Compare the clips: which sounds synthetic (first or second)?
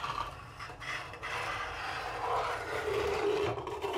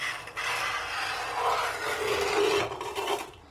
first